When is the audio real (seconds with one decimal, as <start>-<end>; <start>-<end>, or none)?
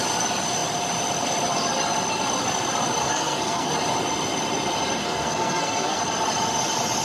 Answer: 0.0-3.0; 3.7-5.0; 6.0-7.0